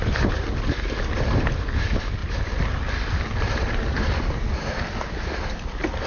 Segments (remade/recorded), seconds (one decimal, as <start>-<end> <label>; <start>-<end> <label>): 0.0-2.2 recorded; 2.2-5.1 remade; 5.1-6.1 recorded